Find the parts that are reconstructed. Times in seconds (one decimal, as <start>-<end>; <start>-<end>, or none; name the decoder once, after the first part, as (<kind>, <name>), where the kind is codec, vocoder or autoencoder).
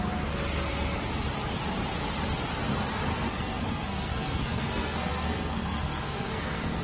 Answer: 3.1-6.8 (codec, SNAC)